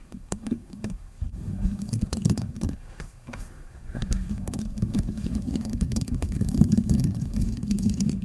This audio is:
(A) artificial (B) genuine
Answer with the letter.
A